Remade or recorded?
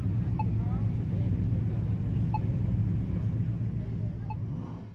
recorded